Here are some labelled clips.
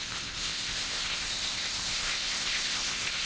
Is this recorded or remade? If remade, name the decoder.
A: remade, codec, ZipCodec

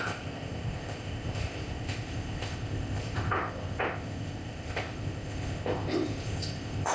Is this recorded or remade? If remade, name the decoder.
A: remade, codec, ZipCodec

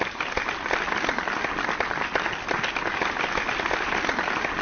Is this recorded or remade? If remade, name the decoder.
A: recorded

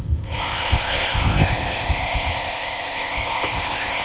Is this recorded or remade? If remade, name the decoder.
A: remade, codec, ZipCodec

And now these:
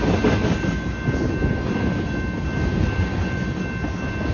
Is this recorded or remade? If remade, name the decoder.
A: recorded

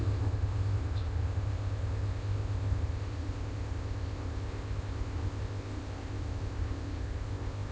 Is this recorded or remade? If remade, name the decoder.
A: remade, codec, ZipCodec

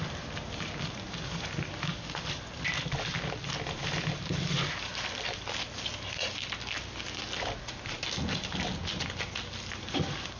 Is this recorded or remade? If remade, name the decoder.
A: recorded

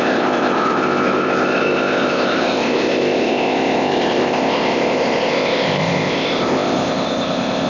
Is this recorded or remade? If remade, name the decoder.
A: remade, codec, ZipCodec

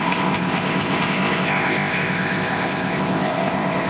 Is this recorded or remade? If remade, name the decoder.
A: remade, codec, ZipCodec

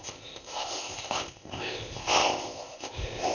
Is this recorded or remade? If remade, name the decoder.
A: remade, codec, ZipCodec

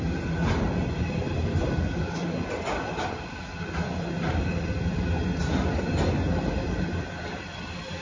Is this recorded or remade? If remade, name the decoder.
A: recorded